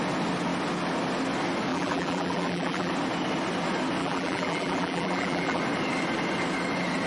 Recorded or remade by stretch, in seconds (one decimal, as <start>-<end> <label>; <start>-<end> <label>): 0.0-1.7 recorded; 1.7-2.9 remade; 2.9-4.0 recorded; 4.0-5.6 remade; 5.6-7.1 recorded